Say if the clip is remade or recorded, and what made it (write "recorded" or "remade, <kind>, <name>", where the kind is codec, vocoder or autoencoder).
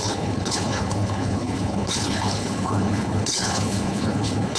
remade, codec, HILCodec